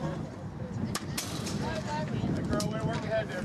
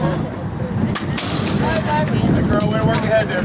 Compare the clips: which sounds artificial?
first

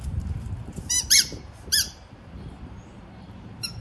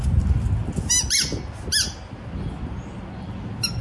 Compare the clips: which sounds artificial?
first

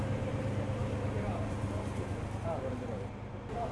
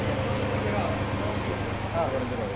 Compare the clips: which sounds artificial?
first